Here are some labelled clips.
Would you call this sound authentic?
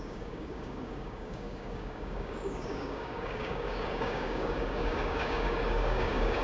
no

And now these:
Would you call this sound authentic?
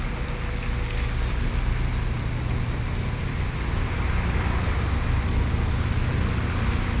yes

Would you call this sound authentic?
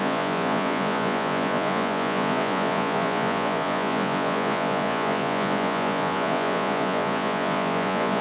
no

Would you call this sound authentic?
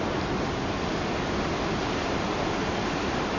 yes